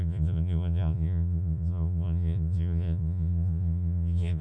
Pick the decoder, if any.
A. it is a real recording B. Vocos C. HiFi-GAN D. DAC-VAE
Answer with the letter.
B